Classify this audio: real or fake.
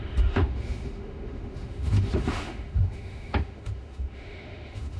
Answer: fake